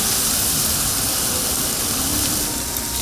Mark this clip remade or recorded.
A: remade